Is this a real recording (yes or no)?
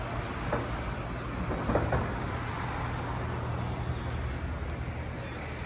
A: yes